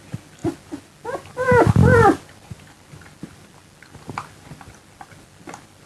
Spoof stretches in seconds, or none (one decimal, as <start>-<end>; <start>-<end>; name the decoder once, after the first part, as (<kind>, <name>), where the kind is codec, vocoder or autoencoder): none